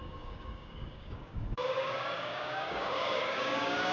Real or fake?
fake